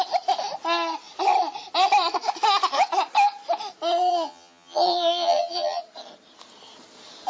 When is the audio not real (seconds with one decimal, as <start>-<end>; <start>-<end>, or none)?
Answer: 4.1-5.8